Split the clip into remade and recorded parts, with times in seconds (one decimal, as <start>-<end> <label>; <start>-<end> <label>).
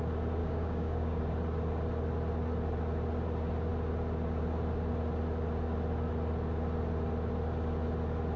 0.0-0.4 recorded; 0.4-1.2 remade; 1.2-8.4 recorded